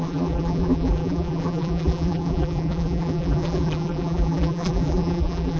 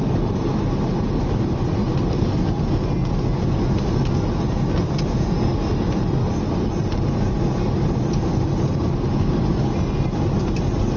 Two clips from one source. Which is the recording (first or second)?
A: second